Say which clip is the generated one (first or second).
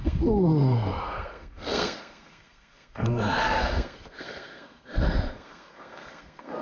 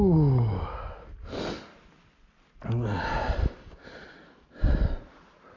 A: first